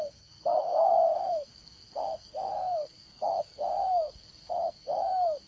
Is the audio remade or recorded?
remade